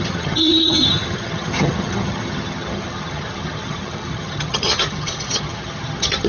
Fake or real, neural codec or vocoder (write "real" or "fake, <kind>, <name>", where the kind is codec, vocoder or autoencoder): fake, vocoder, HiFi-GAN